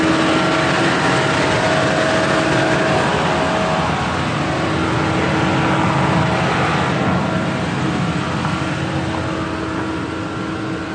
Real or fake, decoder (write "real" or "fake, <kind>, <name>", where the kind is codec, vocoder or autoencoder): real